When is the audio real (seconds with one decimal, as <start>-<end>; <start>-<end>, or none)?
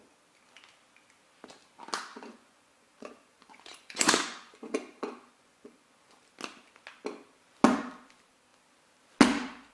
0.0-2.1; 6.2-9.7